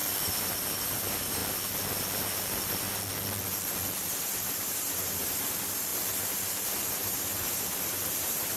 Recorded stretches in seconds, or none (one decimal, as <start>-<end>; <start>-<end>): 0.0-0.9; 1.4-4.0